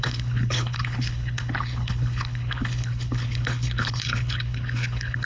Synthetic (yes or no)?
yes